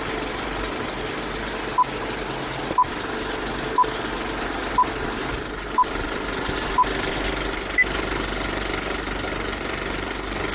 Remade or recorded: recorded